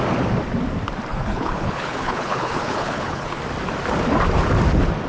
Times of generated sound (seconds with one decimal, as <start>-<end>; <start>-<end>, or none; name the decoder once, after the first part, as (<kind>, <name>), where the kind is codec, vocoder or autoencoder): 1.1-3.4 (codec, HILCodec)